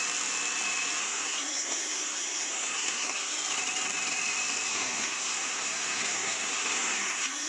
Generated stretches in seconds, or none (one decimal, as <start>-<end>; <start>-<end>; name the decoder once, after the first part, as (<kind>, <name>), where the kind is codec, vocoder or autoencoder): 1.0-3.3 (codec, SNAC); 4.7-7.5